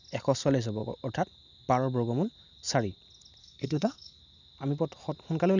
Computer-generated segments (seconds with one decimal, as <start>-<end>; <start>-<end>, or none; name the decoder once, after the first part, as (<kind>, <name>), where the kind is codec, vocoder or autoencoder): 3.4-4.2 (codec, SNAC)